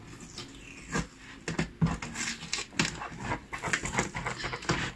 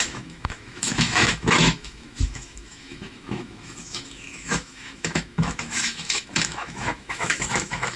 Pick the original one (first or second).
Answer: first